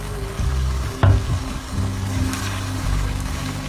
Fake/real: fake